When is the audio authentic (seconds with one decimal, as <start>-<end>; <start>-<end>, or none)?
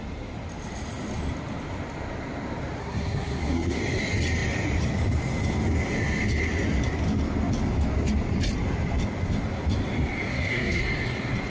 0.0-2.8; 3.8-10.3; 10.8-11.5